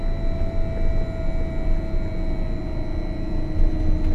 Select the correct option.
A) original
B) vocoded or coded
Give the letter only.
A